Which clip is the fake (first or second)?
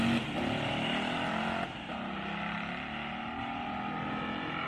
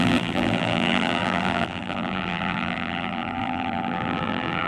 second